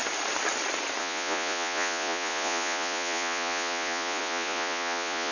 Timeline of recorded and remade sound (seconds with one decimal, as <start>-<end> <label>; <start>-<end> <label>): 0.0-1.0 recorded; 1.0-5.3 remade